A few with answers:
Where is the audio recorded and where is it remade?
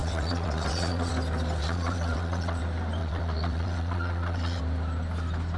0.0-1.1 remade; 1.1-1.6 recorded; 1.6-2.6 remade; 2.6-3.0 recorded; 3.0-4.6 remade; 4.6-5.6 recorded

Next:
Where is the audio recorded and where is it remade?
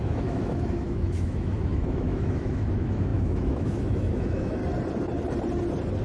0.0-4.6 remade; 4.6-6.0 recorded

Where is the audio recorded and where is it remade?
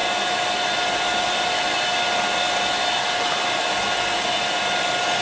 0.0-5.2 recorded